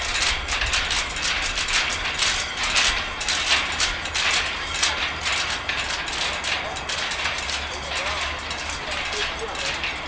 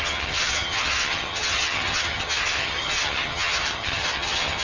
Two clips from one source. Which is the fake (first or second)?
second